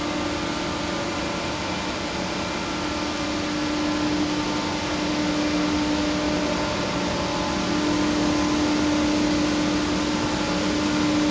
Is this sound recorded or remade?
recorded